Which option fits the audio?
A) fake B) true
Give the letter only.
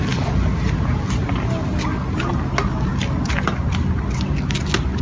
B